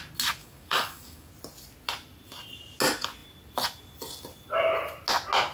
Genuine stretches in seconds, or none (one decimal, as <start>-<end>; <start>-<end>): 0.0-0.4; 1.3-5.5